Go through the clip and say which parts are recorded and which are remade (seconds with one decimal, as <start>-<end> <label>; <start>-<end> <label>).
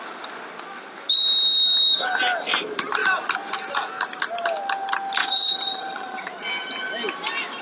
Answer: 0.0-5.2 recorded; 5.2-6.3 remade; 6.3-7.6 recorded